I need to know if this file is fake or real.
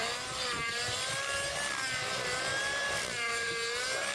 real